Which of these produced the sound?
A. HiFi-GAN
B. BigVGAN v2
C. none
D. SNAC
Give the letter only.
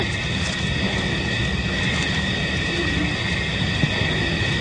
C